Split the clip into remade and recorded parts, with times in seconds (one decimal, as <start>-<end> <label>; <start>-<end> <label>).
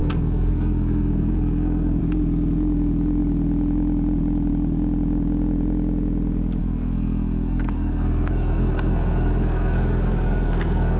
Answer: 0.0-2.0 remade; 2.0-6.6 recorded; 6.6-11.0 remade